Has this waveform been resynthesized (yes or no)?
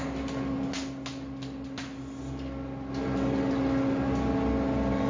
no